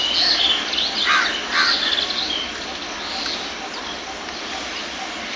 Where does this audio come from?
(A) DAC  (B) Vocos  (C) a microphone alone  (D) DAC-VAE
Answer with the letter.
C